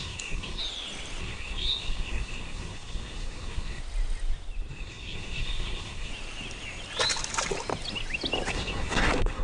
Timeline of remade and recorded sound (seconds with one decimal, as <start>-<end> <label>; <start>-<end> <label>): 0.0-0.6 remade; 0.6-1.2 recorded; 1.2-3.8 remade; 3.8-4.7 recorded; 4.7-6.1 remade; 6.1-8.5 recorded; 8.5-9.4 remade